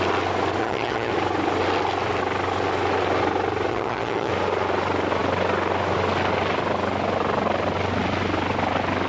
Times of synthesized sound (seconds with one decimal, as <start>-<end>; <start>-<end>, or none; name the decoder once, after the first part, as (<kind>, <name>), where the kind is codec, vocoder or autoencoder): 0.6-1.1 (vocoder, HiFi-GAN); 3.7-4.3

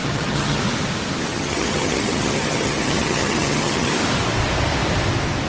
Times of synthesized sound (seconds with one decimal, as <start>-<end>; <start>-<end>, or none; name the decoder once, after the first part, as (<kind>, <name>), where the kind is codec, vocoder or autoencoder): 0.0-0.6 (vocoder, HiFi-GAN); 1.3-3.9

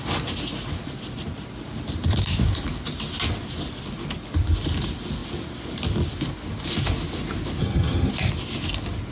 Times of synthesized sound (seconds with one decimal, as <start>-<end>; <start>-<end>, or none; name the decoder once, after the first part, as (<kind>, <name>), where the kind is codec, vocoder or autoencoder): 7.6-8.1 (vocoder, HiFi-GAN)